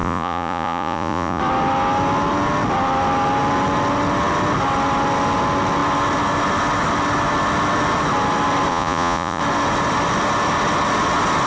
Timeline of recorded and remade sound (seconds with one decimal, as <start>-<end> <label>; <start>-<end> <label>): 0.0-1.4 remade; 1.4-8.7 recorded; 8.7-9.4 remade; 9.4-11.5 recorded